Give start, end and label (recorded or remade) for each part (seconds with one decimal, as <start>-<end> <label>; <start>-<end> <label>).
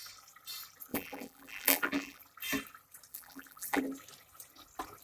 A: 0.0-0.9 recorded; 0.9-2.2 remade; 2.2-3.1 recorded; 3.1-3.8 remade; 3.8-5.0 recorded